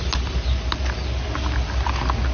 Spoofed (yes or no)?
no